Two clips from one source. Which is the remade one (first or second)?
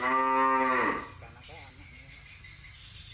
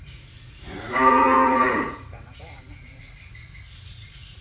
second